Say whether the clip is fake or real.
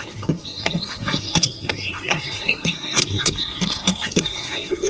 fake